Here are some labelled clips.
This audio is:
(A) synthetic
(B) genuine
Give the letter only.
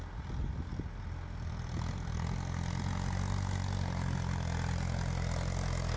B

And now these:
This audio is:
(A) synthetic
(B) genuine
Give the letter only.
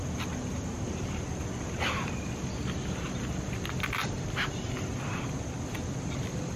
B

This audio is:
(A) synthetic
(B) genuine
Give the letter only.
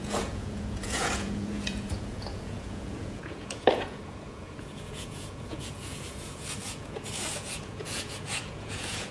A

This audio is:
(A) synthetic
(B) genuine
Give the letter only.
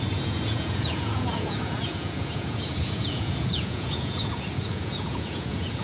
A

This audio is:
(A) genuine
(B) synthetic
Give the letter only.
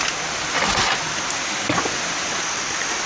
A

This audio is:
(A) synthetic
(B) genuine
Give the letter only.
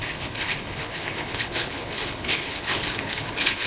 A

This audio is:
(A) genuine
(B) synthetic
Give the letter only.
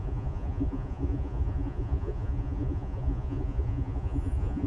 B